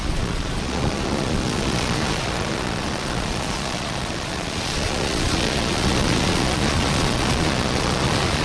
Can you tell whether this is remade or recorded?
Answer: remade